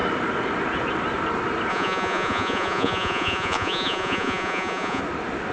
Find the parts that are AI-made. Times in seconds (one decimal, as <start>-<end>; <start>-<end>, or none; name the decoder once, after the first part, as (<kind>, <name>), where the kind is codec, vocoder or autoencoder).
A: 1.7-5.0 (vocoder, Vocos)